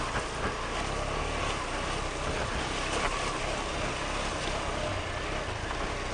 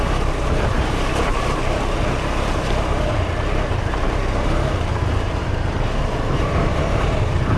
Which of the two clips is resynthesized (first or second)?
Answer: second